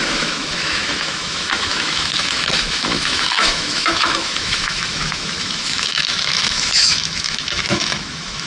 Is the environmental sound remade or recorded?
remade